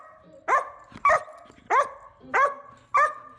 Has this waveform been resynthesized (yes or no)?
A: no